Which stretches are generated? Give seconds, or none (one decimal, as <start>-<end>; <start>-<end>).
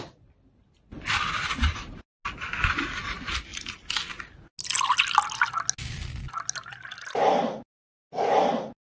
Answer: 3.5-4.0